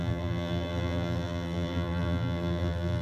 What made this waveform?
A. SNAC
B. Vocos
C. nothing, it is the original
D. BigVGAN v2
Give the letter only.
D